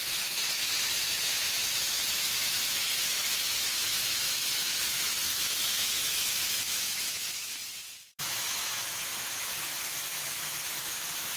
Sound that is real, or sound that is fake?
fake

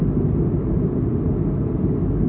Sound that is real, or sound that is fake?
real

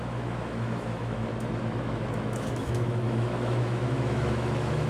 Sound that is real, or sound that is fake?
fake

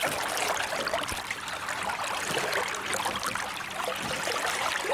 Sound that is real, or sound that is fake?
real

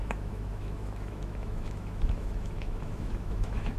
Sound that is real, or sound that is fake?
fake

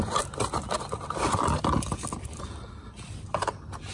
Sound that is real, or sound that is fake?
real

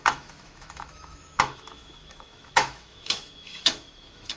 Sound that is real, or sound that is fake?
fake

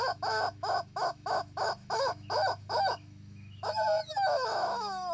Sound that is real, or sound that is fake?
fake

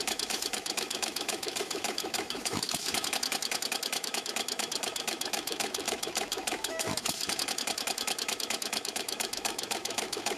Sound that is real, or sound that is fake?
fake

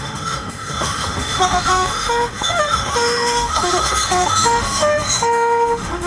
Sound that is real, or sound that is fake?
fake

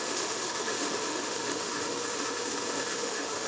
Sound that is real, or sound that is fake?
fake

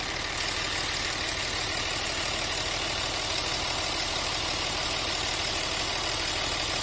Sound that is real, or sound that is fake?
real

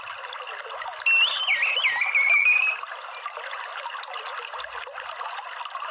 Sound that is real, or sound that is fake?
real